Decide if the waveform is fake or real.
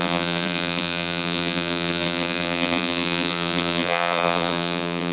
fake